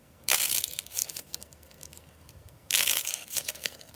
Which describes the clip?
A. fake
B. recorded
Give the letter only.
A